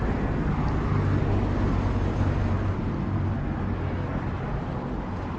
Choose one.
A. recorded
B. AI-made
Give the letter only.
A